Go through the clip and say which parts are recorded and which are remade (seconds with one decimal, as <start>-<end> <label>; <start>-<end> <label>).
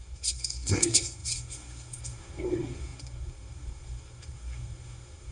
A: 0.0-5.3 remade